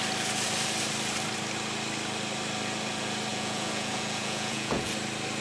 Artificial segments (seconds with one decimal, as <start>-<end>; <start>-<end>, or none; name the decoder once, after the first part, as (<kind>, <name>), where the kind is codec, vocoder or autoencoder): 3.3-4.9 (vocoder, Vocos)